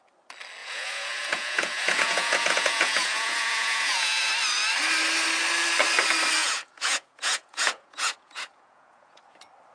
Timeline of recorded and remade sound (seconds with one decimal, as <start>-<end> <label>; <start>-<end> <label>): 0.0-0.6 recorded; 0.6-4.3 remade; 4.3-6.4 recorded; 6.4-9.2 remade; 9.2-9.7 recorded